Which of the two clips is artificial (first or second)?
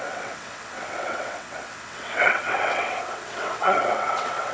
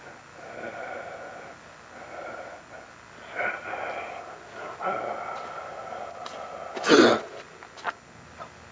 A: first